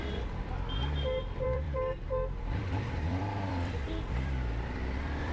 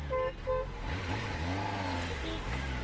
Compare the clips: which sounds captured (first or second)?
second